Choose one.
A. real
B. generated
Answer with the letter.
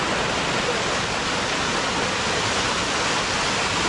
A